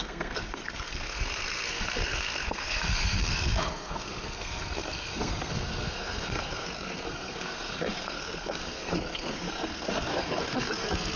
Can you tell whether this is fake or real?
fake